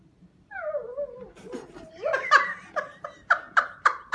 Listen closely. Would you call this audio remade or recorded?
remade